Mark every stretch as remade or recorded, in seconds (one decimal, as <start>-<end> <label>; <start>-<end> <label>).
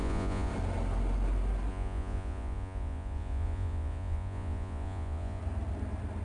0.0-0.5 remade; 0.5-1.7 recorded; 1.7-5.4 remade; 5.4-6.2 recorded